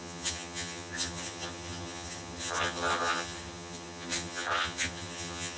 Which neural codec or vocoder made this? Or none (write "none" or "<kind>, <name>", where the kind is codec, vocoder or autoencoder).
vocoder, HiFi-GAN